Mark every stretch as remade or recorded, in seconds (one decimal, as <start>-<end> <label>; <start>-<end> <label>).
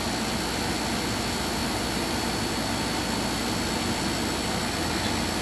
0.0-5.4 recorded